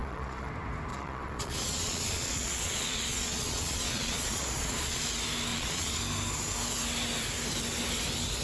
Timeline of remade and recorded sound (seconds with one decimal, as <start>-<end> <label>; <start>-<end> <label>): 0.0-0.5 remade; 0.5-0.9 recorded; 0.9-5.0 remade; 5.0-5.5 recorded; 5.5-6.0 remade; 6.0-8.4 recorded